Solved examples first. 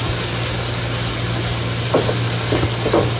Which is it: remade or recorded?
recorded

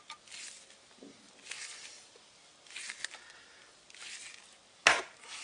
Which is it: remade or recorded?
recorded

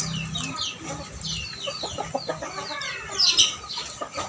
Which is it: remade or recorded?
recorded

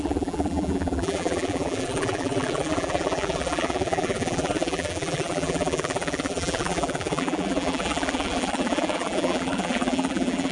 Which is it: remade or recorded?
remade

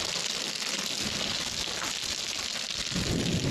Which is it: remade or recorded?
recorded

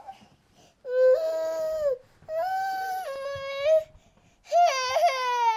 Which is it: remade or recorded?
recorded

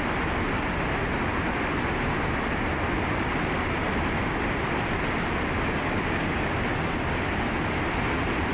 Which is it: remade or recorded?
recorded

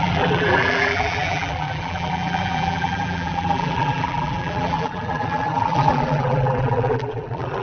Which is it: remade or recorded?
remade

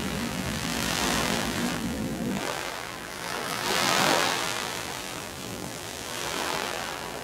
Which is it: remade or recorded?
remade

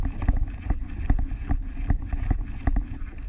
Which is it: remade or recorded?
recorded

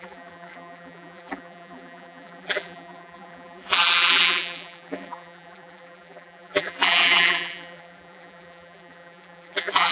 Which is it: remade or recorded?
remade